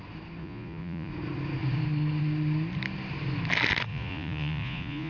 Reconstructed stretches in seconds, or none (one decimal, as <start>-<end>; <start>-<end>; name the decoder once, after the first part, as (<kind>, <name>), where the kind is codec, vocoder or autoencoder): 0.4-1.1 (vocoder, Vocos); 3.9-5.1